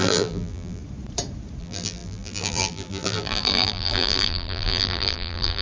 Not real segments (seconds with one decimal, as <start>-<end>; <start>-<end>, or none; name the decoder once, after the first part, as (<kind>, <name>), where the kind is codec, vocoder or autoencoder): 0.0-0.8 (vocoder, BigVGAN v2); 1.6-5.6